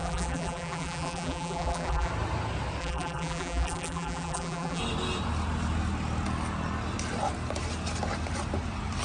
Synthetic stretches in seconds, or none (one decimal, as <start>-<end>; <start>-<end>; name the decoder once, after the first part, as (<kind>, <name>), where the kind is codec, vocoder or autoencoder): 0.0-2.1 (vocoder, BigVGAN v2); 2.8-4.8